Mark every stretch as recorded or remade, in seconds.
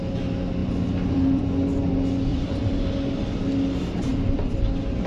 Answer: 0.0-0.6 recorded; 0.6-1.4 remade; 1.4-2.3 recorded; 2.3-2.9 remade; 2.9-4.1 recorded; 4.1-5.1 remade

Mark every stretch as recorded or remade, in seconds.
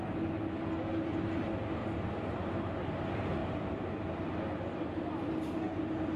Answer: 0.0-1.8 recorded; 1.8-2.5 remade; 2.5-3.4 recorded; 3.4-5.1 remade; 5.1-6.2 recorded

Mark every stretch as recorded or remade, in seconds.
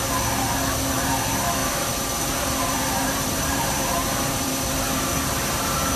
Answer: 0.0-1.6 recorded; 1.6-5.2 remade; 5.2-6.0 recorded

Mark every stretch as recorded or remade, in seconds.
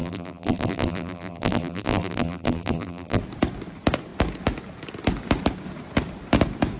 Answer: 0.0-3.2 remade; 3.2-6.8 recorded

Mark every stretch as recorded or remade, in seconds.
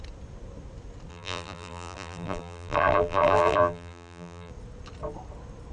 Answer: 0.0-1.1 recorded; 1.1-4.5 remade; 4.5-5.7 recorded